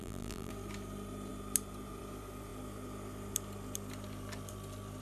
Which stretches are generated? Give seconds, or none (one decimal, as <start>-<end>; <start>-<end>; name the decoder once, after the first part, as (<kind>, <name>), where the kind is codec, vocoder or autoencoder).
0.0-0.5 (vocoder, BigVGAN v2)